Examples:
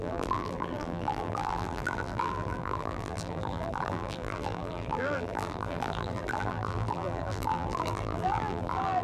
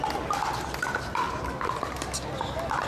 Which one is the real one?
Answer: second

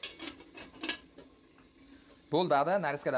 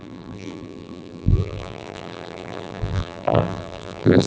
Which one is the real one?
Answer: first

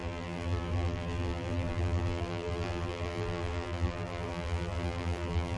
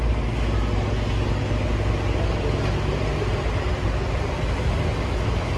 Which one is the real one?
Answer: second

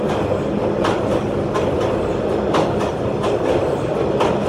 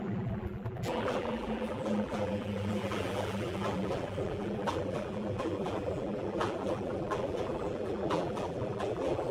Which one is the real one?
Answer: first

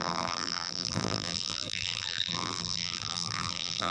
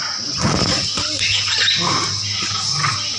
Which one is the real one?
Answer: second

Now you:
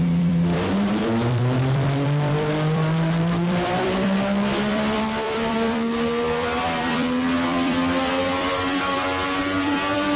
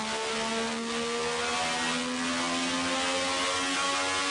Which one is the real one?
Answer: second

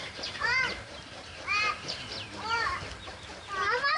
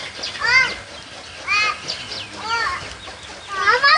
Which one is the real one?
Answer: second